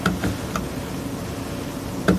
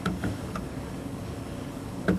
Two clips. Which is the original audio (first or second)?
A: first